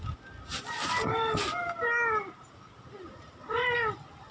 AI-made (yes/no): no